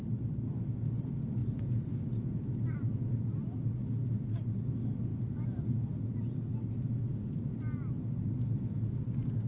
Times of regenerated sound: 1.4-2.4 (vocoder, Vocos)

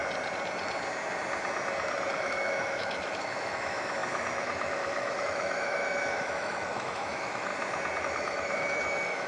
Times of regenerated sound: 2.1-7.5 (autoencoder, DAC-VAE); 8.0-9.3